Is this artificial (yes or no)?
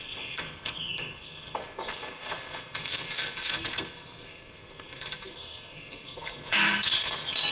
yes